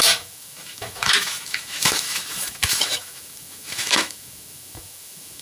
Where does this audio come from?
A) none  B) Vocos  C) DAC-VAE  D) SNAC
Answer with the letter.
C